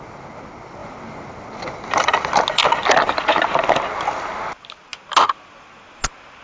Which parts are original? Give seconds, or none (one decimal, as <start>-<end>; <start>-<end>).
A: 0.0-6.4